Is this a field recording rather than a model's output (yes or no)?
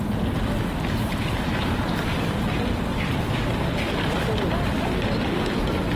yes